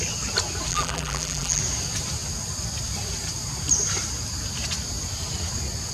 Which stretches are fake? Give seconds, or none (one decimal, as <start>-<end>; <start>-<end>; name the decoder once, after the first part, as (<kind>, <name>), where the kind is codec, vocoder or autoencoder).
0.7-1.6 (vocoder, BigVGAN v2)